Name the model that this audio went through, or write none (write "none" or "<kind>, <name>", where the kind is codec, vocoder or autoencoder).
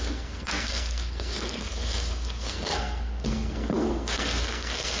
codec, SNAC